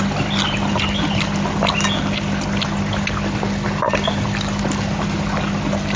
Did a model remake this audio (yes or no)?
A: no